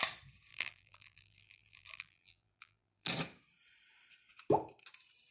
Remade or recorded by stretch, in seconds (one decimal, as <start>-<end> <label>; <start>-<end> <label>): 0.0-0.5 recorded; 0.5-3.1 remade; 3.1-5.3 recorded